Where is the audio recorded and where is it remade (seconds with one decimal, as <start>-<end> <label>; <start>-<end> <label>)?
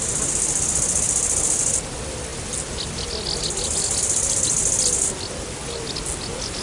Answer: 0.0-6.6 recorded